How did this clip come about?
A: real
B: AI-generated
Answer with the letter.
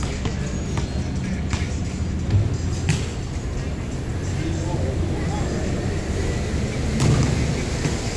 A